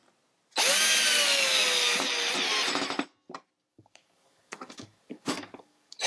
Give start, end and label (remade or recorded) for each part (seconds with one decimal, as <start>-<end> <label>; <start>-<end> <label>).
0.0-3.7 recorded; 3.7-6.1 remade